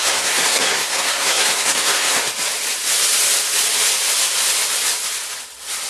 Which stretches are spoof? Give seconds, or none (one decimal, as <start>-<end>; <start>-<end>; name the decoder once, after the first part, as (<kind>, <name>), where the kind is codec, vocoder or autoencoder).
0.0-2.2 (codec, SNAC)